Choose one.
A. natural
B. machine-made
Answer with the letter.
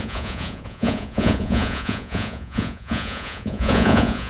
B